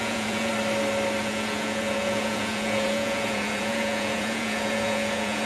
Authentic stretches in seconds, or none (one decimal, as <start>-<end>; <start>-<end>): 0.5-1.2